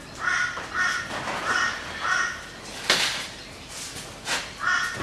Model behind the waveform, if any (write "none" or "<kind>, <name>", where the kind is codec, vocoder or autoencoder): none